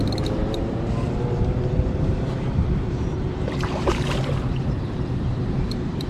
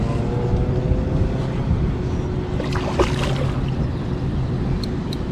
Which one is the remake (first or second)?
first